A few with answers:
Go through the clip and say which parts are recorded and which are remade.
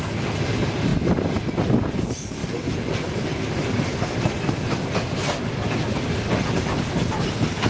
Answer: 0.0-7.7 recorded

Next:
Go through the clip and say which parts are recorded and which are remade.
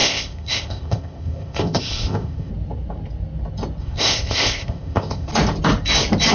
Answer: 0.0-2.5 remade; 2.5-3.8 recorded; 3.8-5.3 remade; 5.3-6.3 recorded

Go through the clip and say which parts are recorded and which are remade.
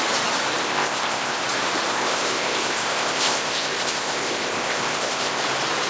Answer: 0.0-0.6 recorded; 0.6-1.4 remade; 1.4-1.9 recorded; 1.9-5.4 remade; 5.4-5.9 recorded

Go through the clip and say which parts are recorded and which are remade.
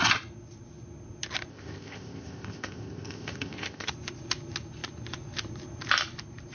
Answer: 0.0-1.5 recorded; 1.5-3.9 remade; 3.9-6.5 recorded